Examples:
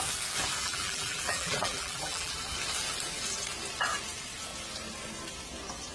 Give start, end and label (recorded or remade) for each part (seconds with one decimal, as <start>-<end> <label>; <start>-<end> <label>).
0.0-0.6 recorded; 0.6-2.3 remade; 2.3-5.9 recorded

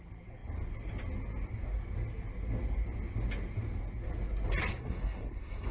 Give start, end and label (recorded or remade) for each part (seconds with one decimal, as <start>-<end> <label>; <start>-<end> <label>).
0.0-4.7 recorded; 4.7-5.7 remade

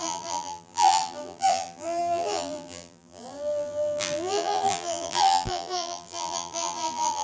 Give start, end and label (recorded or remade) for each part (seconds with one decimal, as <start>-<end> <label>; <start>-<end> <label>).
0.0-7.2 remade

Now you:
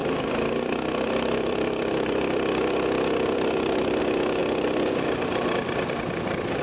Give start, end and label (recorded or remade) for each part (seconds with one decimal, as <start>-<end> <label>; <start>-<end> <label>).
0.0-4.0 remade; 4.0-4.4 recorded; 4.4-6.6 remade

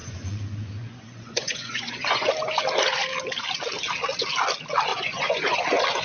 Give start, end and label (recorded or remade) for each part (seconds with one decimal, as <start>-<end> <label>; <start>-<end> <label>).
0.0-2.3 remade; 2.3-4.9 recorded; 4.9-5.6 remade; 5.6-6.0 recorded

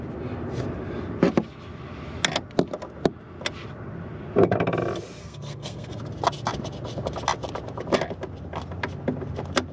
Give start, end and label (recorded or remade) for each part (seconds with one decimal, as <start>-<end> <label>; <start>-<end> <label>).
0.0-5.2 recorded; 5.2-6.0 remade; 6.0-9.7 recorded